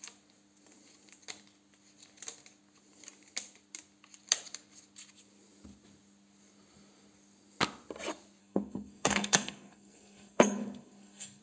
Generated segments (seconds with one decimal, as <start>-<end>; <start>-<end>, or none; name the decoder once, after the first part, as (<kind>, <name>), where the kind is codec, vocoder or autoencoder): 8.4-11.4 (codec, SNAC)